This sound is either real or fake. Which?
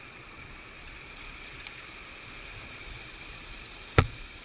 fake